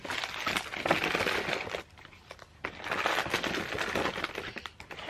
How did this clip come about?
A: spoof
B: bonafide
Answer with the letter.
B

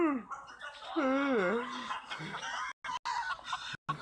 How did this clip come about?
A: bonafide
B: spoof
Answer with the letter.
A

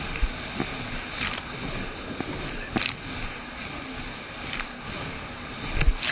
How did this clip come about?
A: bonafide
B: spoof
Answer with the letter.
A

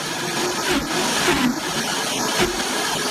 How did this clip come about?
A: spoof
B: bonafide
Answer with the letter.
B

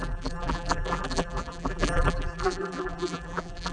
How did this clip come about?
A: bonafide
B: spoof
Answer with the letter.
B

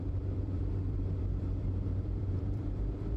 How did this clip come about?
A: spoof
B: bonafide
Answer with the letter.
A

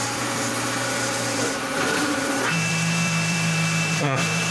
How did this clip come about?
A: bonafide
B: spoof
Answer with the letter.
B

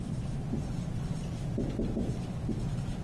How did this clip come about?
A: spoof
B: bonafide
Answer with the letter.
A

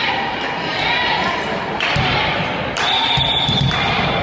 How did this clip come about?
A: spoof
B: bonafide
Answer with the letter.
A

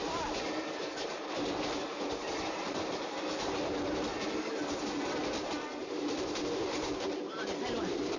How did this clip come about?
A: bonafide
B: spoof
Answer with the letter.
B